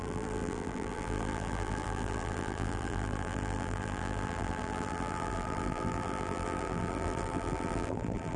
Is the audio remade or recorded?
remade